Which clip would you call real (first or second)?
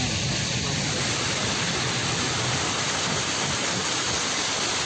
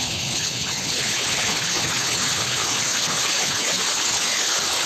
first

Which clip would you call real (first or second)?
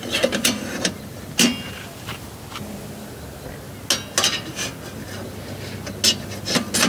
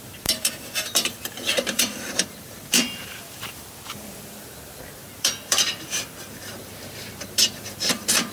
first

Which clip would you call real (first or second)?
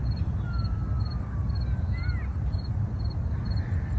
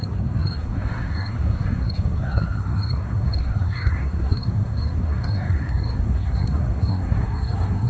first